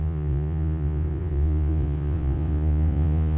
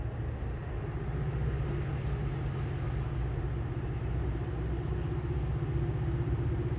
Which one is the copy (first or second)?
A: first